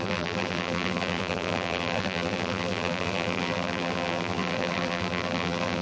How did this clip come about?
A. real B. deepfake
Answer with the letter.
B